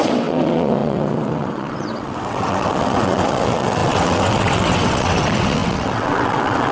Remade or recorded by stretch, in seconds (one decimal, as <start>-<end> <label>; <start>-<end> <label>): 0.0-6.7 remade